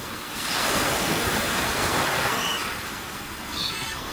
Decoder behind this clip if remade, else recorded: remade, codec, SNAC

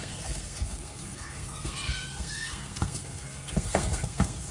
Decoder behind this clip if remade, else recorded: remade, codec, SNAC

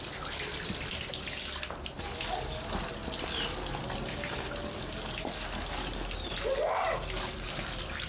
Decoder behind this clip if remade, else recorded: recorded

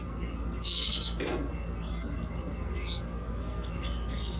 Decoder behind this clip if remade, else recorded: remade, codec, SNAC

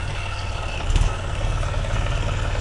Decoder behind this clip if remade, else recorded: remade, codec, SNAC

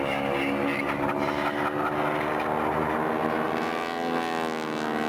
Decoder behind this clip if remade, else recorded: recorded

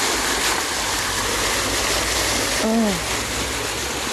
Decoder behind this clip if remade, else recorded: recorded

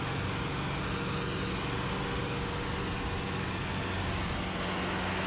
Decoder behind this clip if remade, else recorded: recorded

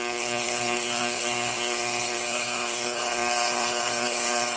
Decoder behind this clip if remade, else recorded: remade, codec, SNAC